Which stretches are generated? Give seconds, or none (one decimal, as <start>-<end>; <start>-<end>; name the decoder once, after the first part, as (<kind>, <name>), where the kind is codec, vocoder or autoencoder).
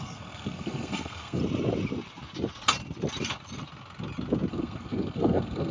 0.0-1.4 (codec, SNAC); 4.5-5.7